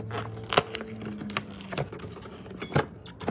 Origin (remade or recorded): recorded